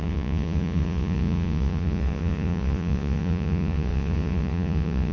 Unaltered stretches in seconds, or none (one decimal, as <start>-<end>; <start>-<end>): none

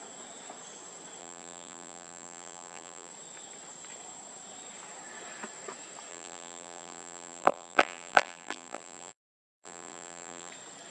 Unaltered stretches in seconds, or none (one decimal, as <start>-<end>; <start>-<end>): 0.0-1.2; 3.1-6.1; 10.5-10.9

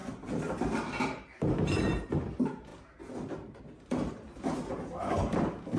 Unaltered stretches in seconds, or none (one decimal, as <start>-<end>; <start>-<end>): 2.7-3.6

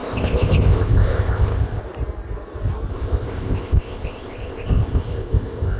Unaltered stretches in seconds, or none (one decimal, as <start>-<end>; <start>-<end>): 1.8-2.9

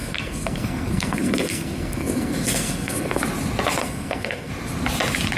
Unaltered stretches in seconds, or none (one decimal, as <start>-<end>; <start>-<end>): 3.2-3.8; 4.5-5.4